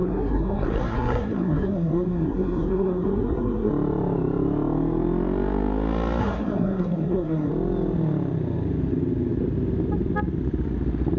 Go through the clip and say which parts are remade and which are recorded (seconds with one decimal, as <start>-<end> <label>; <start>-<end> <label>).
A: 0.0-3.7 remade; 3.7-6.2 recorded; 6.2-7.5 remade; 7.5-11.2 recorded